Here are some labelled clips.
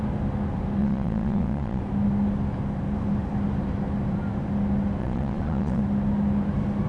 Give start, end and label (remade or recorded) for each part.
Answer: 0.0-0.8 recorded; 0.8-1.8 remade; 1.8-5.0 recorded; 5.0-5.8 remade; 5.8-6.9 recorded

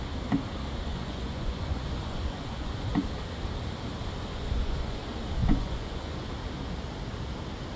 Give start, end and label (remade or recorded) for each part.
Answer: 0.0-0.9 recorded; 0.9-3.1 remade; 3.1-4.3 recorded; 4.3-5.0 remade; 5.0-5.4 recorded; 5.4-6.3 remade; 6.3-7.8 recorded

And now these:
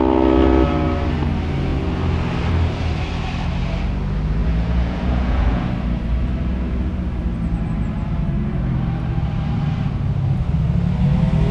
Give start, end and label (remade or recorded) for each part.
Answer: 0.0-4.4 recorded; 4.4-5.7 remade; 5.7-11.5 recorded

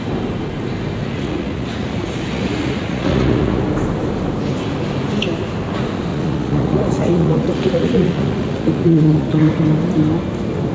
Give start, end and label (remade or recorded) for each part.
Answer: 0.0-1.0 recorded; 1.0-3.6 remade; 3.6-6.1 recorded; 6.1-9.6 remade; 9.6-10.7 recorded

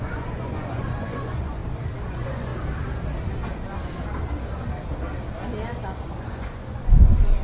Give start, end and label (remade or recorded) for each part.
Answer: 0.0-1.6 remade; 1.6-2.1 recorded; 2.1-2.5 remade; 2.5-6.2 recorded; 6.2-7.4 remade

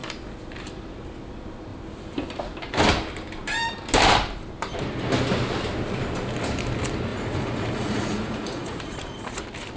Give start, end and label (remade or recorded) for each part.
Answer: 0.0-7.1 recorded; 7.1-9.4 remade; 9.4-9.8 recorded

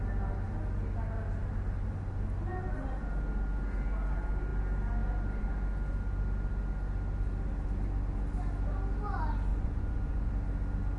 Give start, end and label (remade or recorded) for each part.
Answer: 0.0-9.5 recorded; 9.5-10.3 remade; 10.3-11.0 recorded

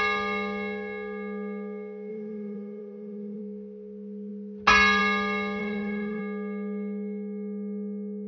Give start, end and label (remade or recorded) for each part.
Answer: 0.0-2.1 recorded; 2.1-3.4 remade; 3.4-5.6 recorded; 5.6-6.2 remade; 6.2-8.3 recorded